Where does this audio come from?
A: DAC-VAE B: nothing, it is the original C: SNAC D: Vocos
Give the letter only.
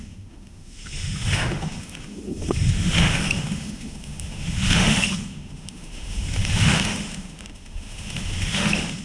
A